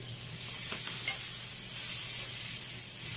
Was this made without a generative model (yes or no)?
yes